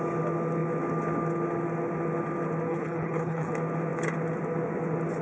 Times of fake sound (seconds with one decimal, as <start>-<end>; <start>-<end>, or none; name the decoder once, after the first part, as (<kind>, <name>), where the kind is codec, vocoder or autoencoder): 2.7-3.5 (codec, HILCodec)